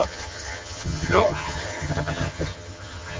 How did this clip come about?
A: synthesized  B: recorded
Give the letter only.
A